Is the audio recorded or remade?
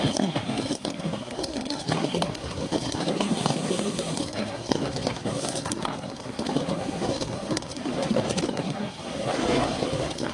remade